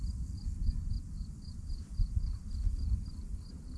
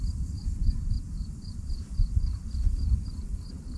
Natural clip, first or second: first